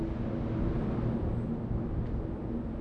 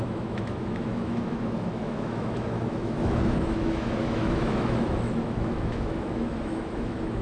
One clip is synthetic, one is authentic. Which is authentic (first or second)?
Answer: first